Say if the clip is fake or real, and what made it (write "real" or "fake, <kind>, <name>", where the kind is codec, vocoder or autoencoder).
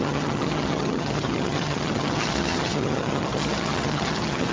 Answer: fake, vocoder, HiFi-GAN